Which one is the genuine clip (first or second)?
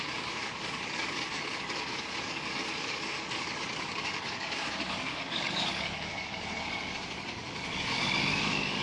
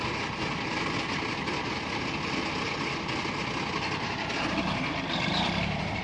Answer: second